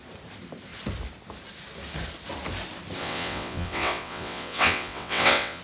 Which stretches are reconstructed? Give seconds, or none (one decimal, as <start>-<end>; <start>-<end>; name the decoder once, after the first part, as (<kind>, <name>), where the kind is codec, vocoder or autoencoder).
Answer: 3.0-5.6 (vocoder, WaveNeXt)